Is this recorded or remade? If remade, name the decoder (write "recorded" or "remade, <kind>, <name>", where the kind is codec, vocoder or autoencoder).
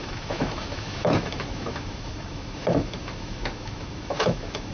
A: remade, autoencoder, DAC-VAE